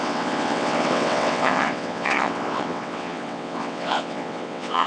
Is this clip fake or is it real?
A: fake